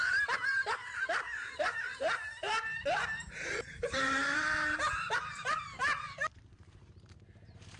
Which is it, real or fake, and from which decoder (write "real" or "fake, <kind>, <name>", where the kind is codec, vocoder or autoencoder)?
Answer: fake, vocoder, BigVGAN v2